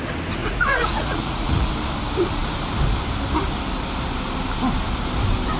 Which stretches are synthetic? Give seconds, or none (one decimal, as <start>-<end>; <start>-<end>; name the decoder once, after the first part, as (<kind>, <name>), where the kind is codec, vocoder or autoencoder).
0.4-1.7 (vocoder, Vocos)